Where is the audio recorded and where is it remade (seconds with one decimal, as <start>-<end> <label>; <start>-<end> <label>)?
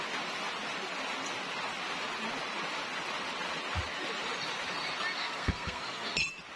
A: 0.0-5.2 recorded; 5.2-6.1 remade; 6.1-6.6 recorded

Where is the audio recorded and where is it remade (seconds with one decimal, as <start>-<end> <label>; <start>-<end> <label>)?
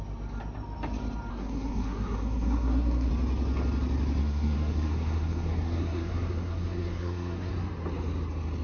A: 0.0-1.3 recorded; 1.3-3.1 remade; 3.1-4.2 recorded; 4.2-7.5 remade; 7.5-8.6 recorded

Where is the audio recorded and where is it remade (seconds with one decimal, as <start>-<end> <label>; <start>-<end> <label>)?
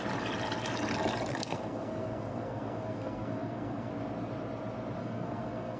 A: 0.0-1.3 recorded; 1.3-3.9 remade; 3.9-5.0 recorded; 5.0-5.8 remade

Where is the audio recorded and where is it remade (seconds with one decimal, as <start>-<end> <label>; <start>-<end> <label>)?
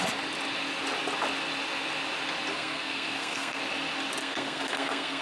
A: 0.0-2.5 recorded; 2.5-3.6 remade; 3.6-4.2 recorded; 4.2-5.2 remade